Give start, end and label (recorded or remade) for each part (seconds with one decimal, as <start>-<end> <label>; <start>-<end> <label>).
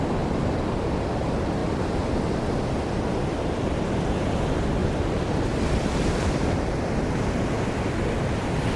0.0-1.6 recorded; 1.6-3.9 remade; 3.9-4.8 recorded; 4.8-7.0 remade; 7.0-8.8 recorded